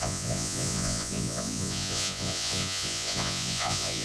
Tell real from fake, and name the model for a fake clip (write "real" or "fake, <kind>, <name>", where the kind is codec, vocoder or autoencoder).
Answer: fake, vocoder, Vocos